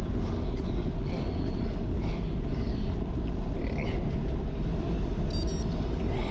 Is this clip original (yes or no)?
yes